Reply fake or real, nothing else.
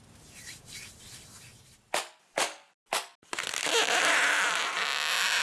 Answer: real